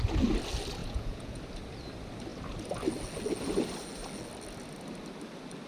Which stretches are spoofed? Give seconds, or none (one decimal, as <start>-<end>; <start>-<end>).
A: 0.8-1.4